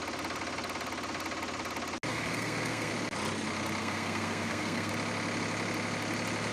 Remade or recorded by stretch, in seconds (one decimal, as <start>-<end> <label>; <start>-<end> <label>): 0.0-2.1 recorded; 2.1-2.9 remade; 2.9-3.8 recorded; 3.8-4.9 remade; 4.9-6.5 recorded